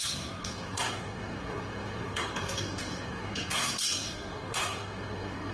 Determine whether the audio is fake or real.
fake